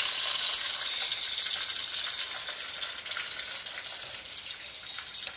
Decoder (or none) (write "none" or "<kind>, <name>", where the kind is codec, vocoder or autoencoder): none